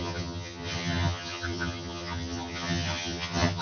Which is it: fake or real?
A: fake